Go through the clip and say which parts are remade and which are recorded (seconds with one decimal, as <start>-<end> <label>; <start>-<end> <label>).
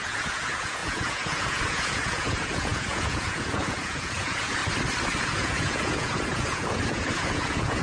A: 0.0-4.6 remade; 4.6-5.2 recorded; 5.2-7.8 remade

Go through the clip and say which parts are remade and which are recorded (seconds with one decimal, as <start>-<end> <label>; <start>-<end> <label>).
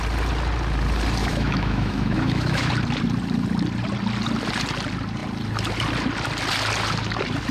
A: 0.0-1.2 recorded; 1.2-2.7 remade; 2.7-7.5 recorded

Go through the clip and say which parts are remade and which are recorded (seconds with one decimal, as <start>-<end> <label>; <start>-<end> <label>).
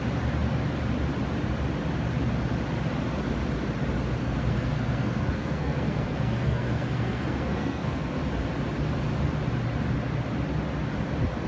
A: 0.0-4.2 recorded; 4.2-8.2 remade; 8.2-11.5 recorded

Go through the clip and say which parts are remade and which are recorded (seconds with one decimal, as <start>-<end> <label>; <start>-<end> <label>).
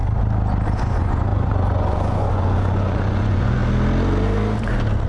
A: 0.0-0.8 recorded; 0.8-3.6 remade; 3.6-5.1 recorded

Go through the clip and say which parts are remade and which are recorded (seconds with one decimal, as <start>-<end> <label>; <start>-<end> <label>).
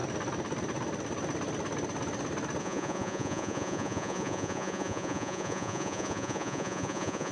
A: 0.0-2.6 recorded; 2.6-7.3 remade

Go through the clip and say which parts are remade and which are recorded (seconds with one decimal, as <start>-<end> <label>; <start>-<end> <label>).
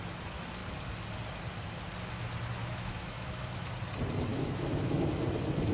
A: 0.0-2.6 recorded; 2.6-3.6 remade; 3.6-4.3 recorded; 4.3-5.1 remade; 5.1-5.7 recorded